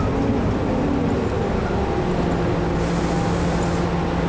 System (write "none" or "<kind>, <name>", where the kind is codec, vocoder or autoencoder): none